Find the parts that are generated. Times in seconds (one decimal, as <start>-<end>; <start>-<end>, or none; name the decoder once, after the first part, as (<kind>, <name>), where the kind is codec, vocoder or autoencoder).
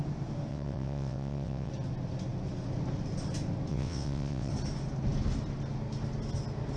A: 0.5-1.7 (vocoder, WaveNeXt); 3.7-4.5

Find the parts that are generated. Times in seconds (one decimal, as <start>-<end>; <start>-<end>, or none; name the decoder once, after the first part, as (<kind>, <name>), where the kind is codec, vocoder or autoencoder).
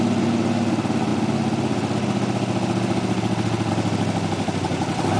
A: none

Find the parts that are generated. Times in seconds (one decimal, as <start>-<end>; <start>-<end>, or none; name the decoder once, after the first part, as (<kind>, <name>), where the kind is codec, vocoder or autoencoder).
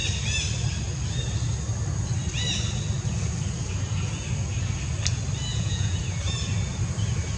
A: 5.5-6.0 (vocoder, Vocos)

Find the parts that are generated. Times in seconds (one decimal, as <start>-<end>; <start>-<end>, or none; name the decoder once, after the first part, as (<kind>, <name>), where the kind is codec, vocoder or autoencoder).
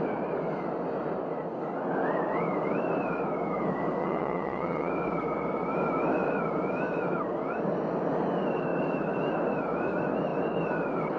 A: 4.0-4.9 (vocoder, WaveNeXt)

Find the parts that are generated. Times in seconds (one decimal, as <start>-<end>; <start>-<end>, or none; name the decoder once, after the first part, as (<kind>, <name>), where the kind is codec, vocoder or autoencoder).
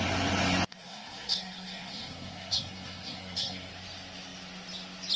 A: 0.7-3.7 (codec, SNAC)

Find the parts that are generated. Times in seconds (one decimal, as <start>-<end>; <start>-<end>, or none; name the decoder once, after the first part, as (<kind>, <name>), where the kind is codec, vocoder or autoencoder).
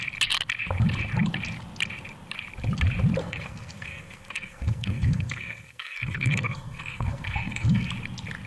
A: 3.2-7.9 (codec, SNAC)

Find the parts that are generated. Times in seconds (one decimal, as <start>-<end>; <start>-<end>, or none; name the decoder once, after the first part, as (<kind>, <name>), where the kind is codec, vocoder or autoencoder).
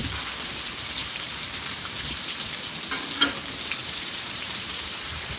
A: 1.0-2.5 (vocoder, BigVGAN v2); 3.8-5.4